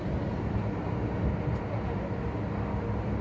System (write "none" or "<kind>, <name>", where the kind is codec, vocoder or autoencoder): none